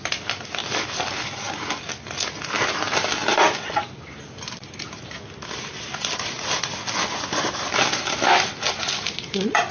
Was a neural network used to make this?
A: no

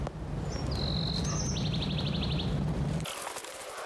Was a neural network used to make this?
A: no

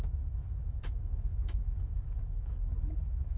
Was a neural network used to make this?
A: yes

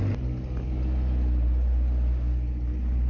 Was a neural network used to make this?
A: no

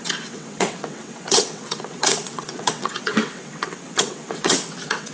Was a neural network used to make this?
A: yes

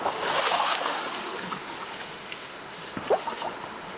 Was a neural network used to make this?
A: yes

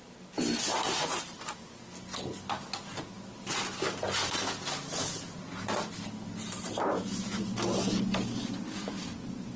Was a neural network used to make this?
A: no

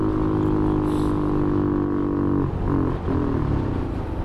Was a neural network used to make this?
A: no